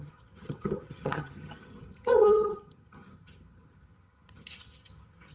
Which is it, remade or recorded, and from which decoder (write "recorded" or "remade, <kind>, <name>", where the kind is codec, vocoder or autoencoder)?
remade, vocoder, HiFi-GAN